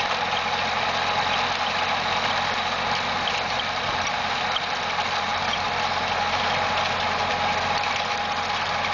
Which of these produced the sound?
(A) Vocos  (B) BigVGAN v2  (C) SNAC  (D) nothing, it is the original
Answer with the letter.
D